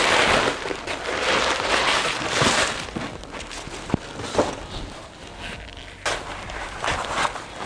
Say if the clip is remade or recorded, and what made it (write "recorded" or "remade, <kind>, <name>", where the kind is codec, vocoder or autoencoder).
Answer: recorded